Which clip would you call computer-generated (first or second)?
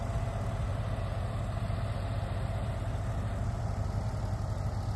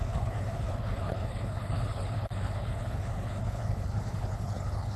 second